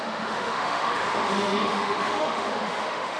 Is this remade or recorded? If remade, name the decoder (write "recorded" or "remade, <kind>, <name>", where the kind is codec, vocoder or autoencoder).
remade, autoencoder, DAC-VAE